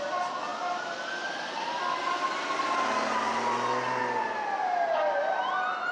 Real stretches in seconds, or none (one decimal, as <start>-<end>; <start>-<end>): 0.0-5.9